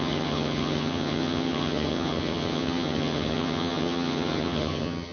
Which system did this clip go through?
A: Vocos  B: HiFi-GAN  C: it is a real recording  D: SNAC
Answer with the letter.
B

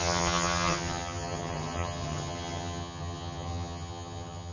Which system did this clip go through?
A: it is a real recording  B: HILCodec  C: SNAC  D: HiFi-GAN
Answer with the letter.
D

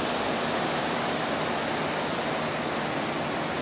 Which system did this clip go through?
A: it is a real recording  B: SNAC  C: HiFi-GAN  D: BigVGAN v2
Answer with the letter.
A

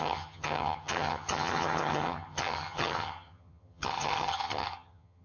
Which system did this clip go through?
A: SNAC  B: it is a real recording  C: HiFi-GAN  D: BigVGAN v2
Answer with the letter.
C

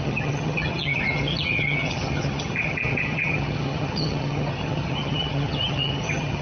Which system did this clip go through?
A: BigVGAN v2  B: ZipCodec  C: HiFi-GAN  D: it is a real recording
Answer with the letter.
C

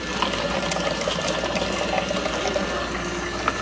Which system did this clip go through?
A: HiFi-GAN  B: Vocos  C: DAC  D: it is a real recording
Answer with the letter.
D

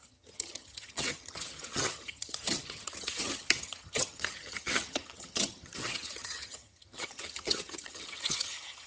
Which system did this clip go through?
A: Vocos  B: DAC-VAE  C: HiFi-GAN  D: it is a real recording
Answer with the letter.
C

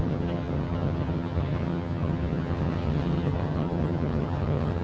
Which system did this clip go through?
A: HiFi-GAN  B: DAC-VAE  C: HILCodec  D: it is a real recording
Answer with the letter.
A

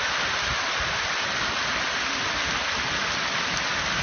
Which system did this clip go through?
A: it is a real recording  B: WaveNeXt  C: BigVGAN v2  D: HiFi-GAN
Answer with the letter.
A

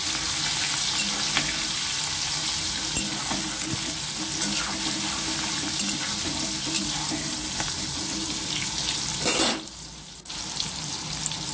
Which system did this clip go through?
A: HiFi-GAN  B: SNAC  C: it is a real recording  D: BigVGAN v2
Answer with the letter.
C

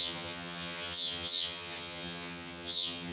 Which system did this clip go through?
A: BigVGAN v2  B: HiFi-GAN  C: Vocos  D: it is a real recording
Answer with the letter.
B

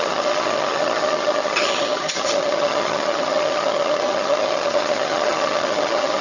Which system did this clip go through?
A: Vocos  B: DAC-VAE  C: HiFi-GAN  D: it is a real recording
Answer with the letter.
C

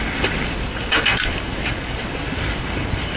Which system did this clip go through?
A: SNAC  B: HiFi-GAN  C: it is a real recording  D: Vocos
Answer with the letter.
C